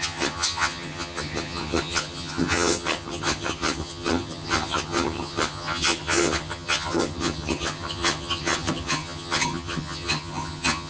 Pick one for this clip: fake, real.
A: fake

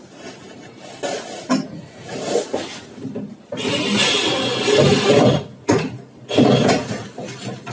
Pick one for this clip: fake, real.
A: real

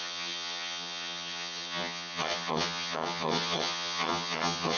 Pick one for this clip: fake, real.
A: fake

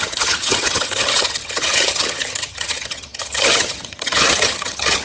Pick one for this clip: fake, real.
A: fake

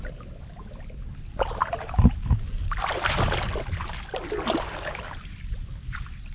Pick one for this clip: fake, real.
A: real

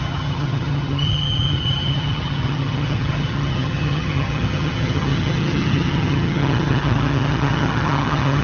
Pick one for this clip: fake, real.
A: fake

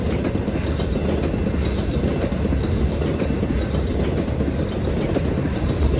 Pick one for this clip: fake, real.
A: real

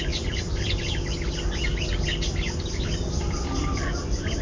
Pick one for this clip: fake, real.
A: real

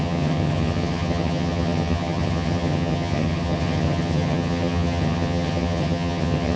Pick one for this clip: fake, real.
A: fake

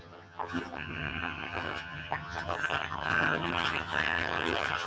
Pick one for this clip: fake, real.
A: fake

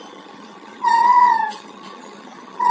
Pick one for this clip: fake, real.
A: fake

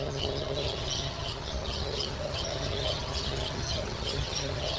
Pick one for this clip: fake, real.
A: fake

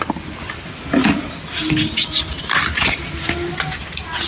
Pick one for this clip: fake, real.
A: real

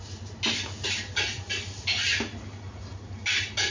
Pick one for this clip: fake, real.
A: real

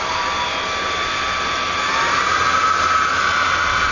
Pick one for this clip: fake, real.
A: real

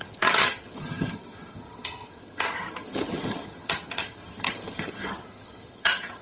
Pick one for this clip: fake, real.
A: fake